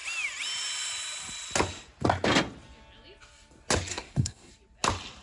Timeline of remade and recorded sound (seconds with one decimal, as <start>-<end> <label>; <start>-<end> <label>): 0.0-3.9 recorded; 3.9-4.5 remade; 4.5-5.2 recorded